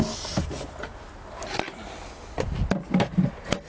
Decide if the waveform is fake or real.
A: real